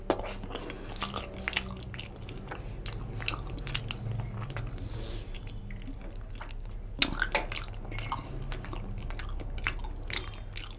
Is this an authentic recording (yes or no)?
yes